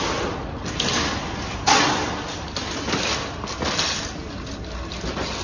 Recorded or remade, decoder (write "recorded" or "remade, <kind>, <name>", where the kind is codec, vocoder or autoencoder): recorded